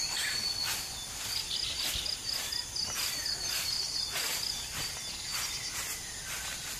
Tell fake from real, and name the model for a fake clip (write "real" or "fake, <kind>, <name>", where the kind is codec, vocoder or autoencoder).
real